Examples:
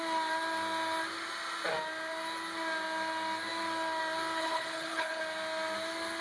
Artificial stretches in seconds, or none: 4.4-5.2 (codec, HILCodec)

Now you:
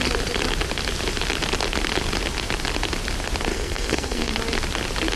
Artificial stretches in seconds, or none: 3.5-4.3 (codec, SNAC)

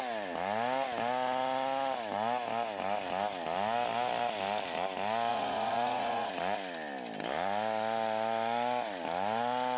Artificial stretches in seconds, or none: 5.3-6.3 (vocoder, Vocos)